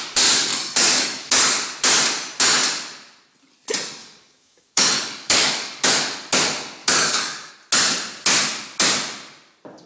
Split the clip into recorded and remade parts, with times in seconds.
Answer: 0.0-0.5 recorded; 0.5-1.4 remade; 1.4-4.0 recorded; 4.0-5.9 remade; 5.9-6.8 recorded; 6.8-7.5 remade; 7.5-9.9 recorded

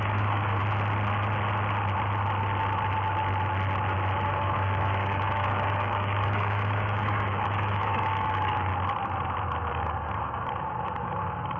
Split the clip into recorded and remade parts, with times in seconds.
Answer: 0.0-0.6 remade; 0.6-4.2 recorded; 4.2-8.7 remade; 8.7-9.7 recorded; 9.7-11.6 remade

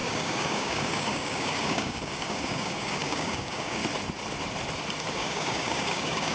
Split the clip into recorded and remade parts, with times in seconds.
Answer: 0.0-3.8 remade; 3.8-5.1 recorded; 5.1-6.3 remade